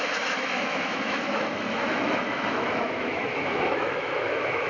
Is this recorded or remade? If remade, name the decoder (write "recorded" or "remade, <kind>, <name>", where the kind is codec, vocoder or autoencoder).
remade, autoencoder, DAC-VAE